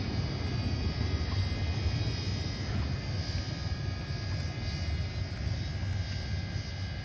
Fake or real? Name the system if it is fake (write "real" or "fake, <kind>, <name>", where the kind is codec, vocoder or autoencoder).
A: real